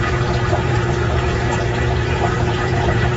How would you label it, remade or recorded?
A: remade